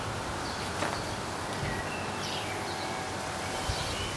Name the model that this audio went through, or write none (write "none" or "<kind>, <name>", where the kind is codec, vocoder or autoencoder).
none